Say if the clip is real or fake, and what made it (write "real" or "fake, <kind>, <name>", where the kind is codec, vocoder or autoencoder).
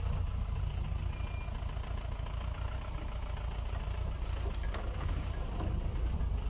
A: real